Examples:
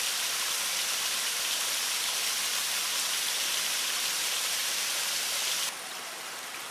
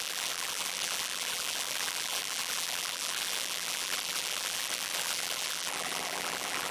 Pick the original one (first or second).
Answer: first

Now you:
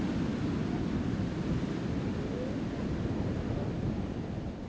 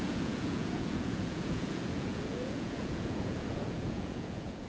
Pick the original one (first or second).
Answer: first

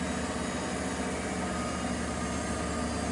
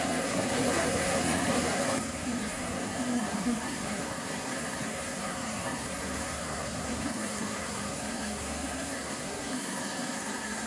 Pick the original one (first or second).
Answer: first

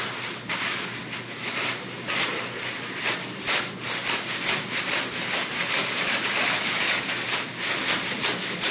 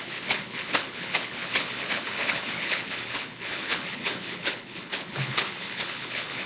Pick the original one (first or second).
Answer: first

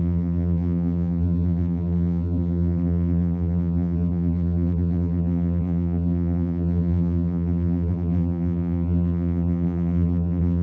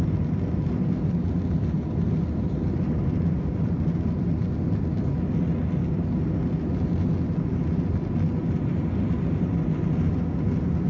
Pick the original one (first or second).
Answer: second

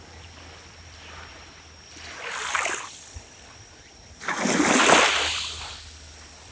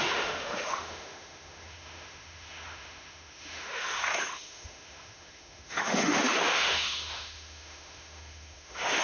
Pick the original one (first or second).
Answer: first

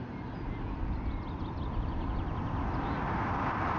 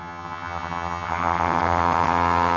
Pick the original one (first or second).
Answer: first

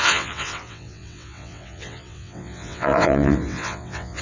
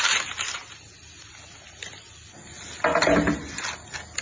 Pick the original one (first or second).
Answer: second